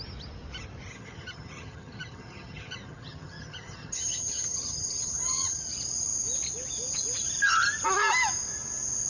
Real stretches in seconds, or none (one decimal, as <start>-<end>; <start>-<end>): 0.0-0.9; 5.6-9.1